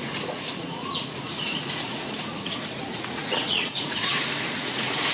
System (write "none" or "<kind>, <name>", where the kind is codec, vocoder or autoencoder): vocoder, Vocos